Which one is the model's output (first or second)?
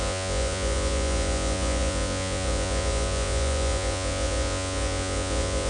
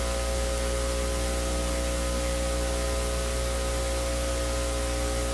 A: first